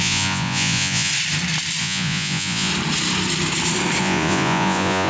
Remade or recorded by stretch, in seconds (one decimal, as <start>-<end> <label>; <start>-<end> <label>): 0.0-1.1 remade; 1.1-1.8 recorded; 1.8-2.7 remade; 2.7-4.0 recorded; 4.0-5.1 remade